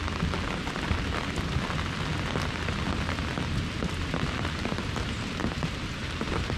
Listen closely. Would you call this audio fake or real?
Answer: real